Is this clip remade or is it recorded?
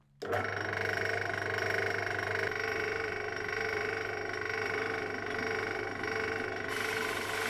recorded